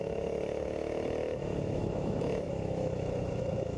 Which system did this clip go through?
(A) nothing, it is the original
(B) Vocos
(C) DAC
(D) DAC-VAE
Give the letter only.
D